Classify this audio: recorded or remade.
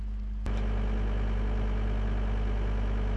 recorded